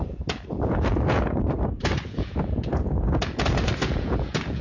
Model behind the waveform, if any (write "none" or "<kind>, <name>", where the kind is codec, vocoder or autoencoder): vocoder, Vocos